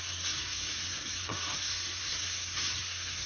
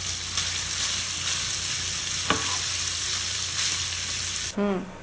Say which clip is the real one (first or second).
second